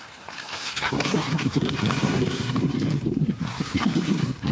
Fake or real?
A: fake